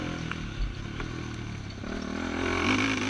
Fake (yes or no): no